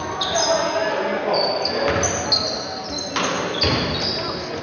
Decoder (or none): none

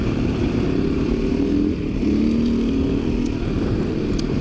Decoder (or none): none